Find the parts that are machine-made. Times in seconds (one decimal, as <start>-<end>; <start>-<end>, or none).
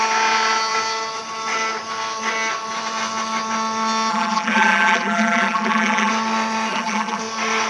4.1-6.1; 6.7-7.2